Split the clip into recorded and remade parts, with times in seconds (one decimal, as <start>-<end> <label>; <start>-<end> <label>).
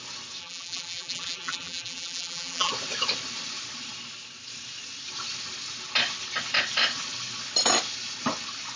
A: 0.0-0.4 recorded; 0.4-2.7 remade; 2.7-8.8 recorded